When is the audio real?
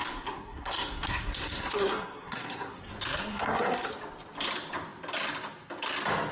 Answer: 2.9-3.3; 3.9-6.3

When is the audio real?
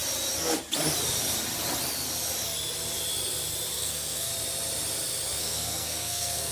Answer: 0.0-3.7; 4.3-5.4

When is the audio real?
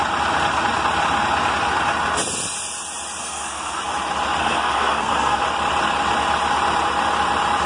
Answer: 0.0-3.2; 3.8-4.4; 5.4-7.7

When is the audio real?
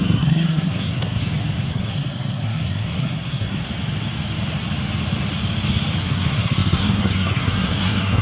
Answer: 1.2-1.7; 3.6-6.0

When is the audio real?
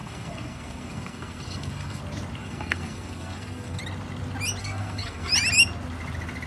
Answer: 2.0-2.4; 3.8-4.6; 5.3-6.5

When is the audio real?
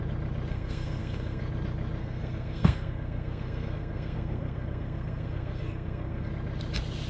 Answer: 0.0-0.5; 1.4-2.0; 6.3-7.1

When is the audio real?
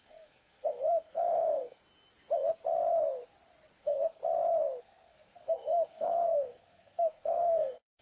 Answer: 1.8-3.8; 4.2-4.8